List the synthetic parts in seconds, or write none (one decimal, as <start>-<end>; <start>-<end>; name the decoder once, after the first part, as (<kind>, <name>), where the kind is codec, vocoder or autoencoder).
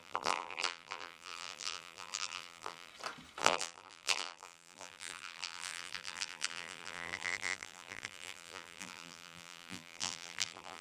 0.0-2.9 (vocoder, BigVGAN v2); 3.4-10.8